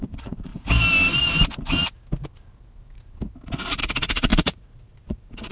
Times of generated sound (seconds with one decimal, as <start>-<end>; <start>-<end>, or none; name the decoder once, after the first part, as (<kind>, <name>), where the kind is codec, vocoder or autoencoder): 0.0-0.5 (vocoder, Vocos); 3.8-5.5